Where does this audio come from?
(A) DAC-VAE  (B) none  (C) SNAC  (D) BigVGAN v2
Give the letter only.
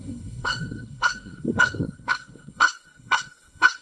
C